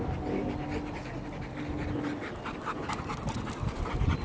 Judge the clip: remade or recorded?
recorded